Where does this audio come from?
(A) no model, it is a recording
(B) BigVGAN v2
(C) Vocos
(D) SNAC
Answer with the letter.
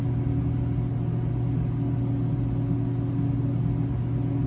A